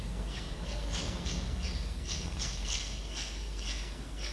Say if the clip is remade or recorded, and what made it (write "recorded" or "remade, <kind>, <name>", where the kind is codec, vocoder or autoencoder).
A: remade, codec, SNAC